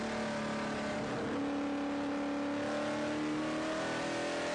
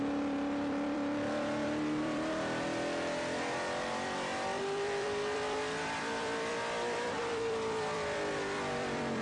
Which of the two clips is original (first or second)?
first